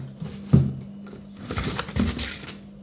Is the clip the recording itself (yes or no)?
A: yes